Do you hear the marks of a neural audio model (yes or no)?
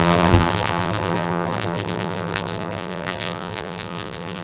yes